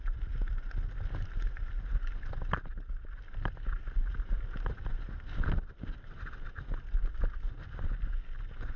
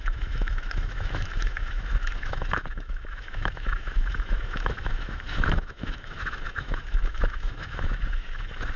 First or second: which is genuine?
first